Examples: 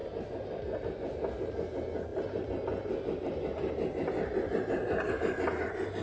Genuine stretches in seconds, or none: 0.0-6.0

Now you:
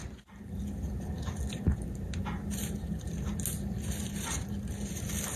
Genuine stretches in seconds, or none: 0.6-5.4